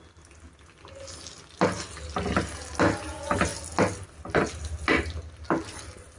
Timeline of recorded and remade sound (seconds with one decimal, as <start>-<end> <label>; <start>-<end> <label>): 0.0-6.2 recorded